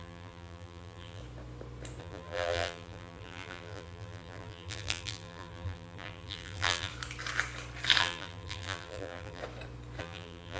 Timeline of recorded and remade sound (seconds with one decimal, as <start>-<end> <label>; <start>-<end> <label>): 0.0-1.2 remade; 1.2-2.0 recorded; 2.0-6.9 remade; 6.9-8.0 recorded; 8.0-9.4 remade; 9.4-10.0 recorded; 10.0-10.6 remade